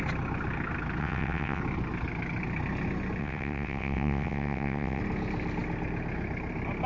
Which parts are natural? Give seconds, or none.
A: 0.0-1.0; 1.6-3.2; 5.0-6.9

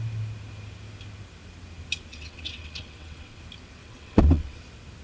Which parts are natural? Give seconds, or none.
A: 0.0-2.1; 3.4-3.8; 4.6-5.0

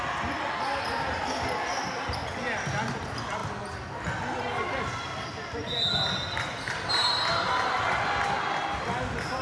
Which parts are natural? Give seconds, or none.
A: 0.0-9.4

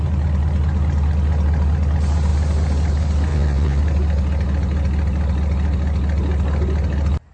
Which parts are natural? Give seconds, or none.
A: 0.0-3.3; 3.8-7.3

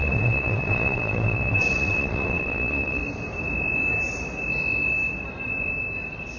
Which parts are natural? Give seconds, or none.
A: 3.0-6.4